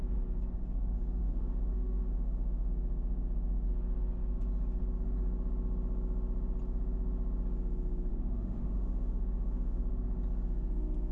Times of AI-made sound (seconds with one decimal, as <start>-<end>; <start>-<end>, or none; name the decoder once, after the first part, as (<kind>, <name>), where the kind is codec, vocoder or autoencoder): 1.2-2.7 (autoencoder, DAC-VAE); 8.1-9.8